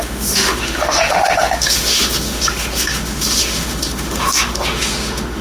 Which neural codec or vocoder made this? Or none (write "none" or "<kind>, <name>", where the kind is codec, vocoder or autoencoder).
autoencoder, DAC-VAE